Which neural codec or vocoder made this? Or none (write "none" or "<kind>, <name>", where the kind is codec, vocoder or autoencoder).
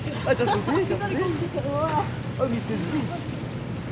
none